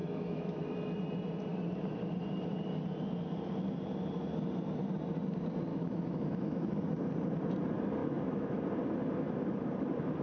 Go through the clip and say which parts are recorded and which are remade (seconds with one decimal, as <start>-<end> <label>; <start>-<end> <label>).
0.0-0.6 remade; 0.6-5.7 recorded; 5.7-6.7 remade; 6.7-8.0 recorded; 8.0-8.6 remade; 8.6-10.2 recorded